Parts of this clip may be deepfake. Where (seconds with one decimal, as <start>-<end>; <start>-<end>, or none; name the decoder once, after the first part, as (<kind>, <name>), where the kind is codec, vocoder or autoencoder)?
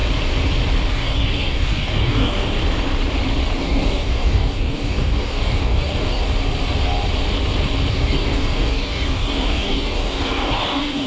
0.9-2.6 (codec, DAC); 3.6-6.2; 7.9-11.1